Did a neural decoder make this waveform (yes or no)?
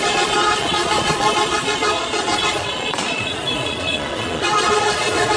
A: yes